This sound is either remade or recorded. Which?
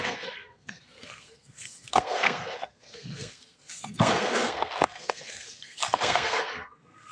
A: remade